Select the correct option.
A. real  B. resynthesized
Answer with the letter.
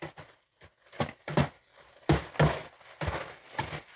A